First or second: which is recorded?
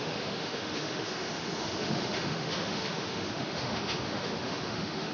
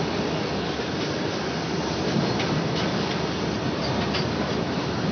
second